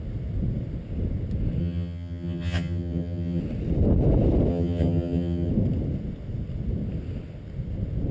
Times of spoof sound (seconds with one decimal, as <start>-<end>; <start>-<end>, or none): 1.6-3.4; 4.5-5.5